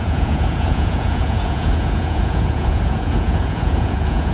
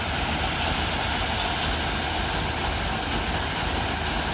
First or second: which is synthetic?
first